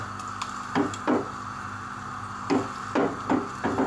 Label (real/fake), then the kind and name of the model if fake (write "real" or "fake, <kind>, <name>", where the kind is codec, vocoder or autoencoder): real